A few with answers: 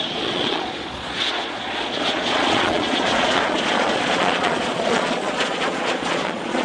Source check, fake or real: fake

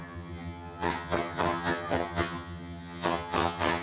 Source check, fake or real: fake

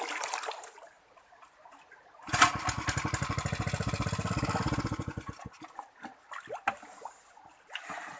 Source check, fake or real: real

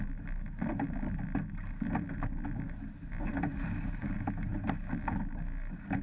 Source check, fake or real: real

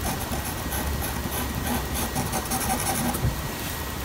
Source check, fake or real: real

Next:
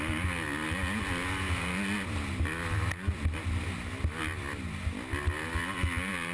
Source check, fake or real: real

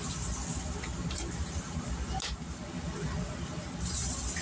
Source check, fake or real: real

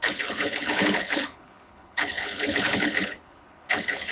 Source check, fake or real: fake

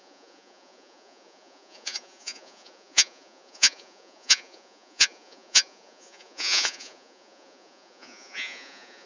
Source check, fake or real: fake